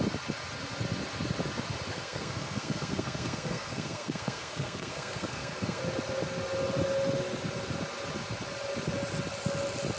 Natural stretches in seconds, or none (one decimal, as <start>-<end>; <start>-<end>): 0.0-1.9; 5.8-10.0